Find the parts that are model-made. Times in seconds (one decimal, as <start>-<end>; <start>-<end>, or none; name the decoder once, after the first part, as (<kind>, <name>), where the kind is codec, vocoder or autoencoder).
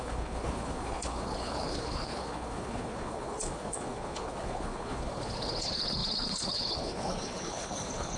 0.0-8.2 (codec, HILCodec)